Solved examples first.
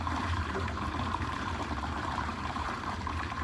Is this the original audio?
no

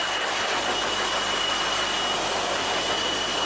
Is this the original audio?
yes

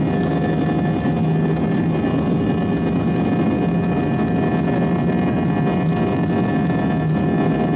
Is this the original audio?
yes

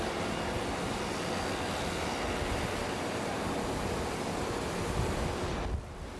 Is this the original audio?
yes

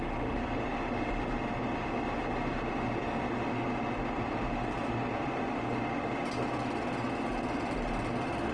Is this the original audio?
yes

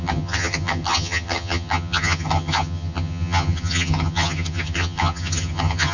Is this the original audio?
no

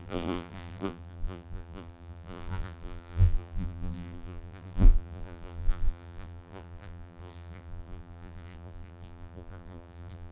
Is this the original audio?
no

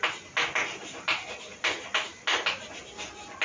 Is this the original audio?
yes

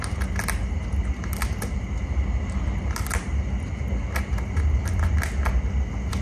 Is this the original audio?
yes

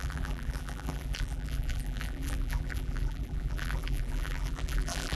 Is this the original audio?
no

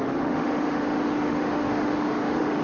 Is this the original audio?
no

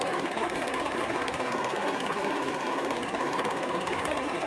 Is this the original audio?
no